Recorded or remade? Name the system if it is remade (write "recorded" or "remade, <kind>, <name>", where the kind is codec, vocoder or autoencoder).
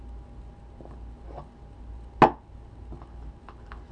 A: recorded